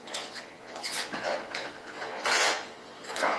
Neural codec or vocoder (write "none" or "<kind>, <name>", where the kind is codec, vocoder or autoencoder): vocoder, Vocos